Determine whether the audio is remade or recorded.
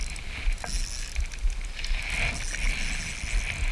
recorded